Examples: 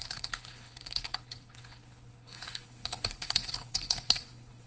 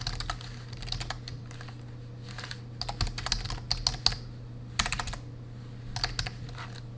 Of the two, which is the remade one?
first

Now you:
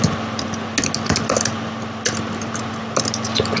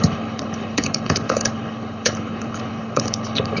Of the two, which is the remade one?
second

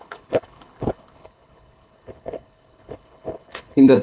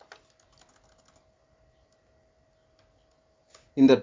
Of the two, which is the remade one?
first